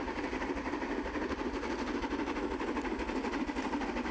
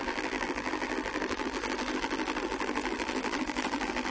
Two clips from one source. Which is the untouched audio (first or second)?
first